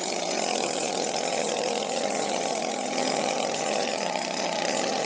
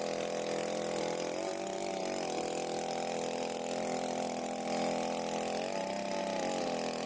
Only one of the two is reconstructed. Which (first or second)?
first